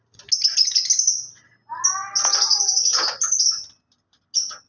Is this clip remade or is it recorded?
recorded